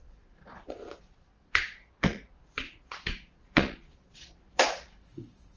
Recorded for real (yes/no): no